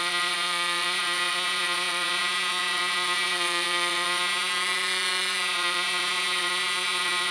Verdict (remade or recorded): remade